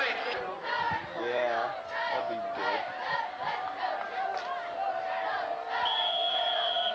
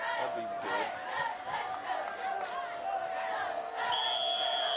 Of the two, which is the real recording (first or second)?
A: second